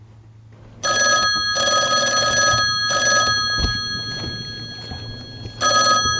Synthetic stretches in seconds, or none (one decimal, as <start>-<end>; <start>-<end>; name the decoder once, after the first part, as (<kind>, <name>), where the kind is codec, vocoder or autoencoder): none